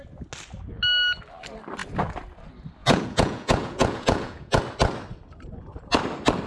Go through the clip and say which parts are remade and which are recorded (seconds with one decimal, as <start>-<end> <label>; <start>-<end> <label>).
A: 0.0-2.8 recorded; 2.8-4.6 remade; 4.6-6.5 recorded